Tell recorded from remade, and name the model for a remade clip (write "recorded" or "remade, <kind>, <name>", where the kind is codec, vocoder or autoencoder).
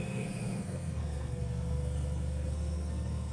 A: remade, codec, SNAC